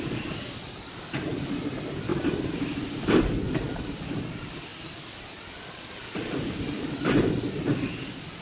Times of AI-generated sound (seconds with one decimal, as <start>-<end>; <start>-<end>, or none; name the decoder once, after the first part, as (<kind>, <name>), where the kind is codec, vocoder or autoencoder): 2.1-4.2 (vocoder, BigVGAN v2); 4.7-6.9